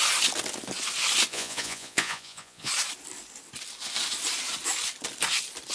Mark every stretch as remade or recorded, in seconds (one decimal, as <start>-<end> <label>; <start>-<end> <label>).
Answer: 0.0-1.3 recorded; 1.3-2.7 remade; 2.7-5.7 recorded